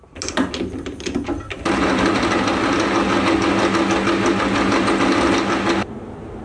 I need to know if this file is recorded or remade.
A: recorded